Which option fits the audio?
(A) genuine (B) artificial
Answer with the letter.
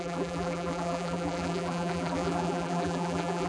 B